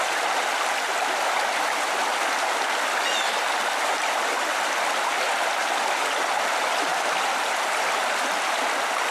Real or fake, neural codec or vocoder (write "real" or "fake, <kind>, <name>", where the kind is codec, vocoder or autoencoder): real